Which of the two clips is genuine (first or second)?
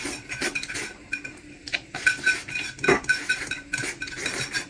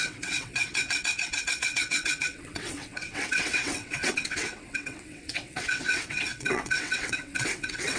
first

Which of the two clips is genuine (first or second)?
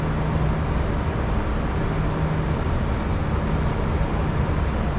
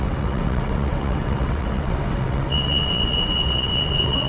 first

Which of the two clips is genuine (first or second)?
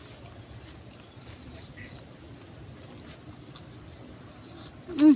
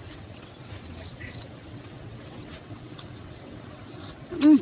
first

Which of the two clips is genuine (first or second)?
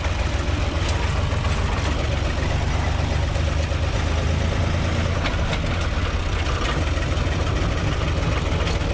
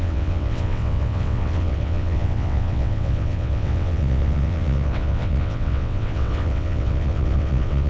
first